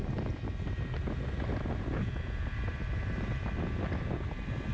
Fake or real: real